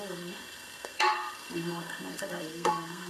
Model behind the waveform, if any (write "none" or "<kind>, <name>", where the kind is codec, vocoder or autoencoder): codec, SNAC